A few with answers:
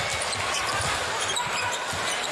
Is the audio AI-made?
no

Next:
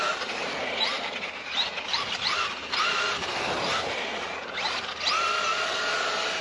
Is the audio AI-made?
yes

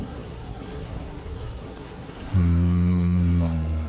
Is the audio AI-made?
yes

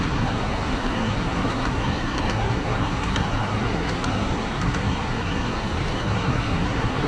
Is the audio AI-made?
yes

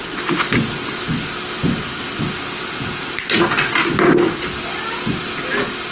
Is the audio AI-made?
no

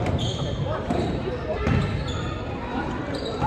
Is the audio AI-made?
yes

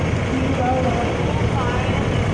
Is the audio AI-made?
no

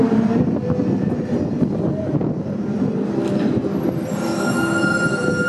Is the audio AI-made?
no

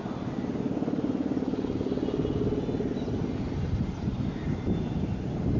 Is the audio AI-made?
no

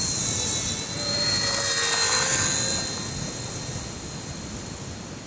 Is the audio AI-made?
no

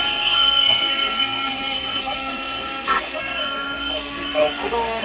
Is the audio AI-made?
yes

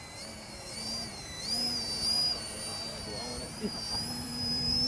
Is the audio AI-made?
yes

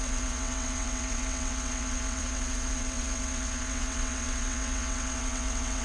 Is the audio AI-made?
yes